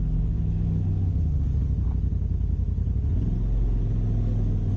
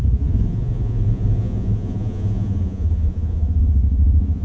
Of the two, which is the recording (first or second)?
first